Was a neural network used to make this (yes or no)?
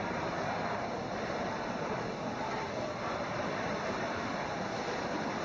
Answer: yes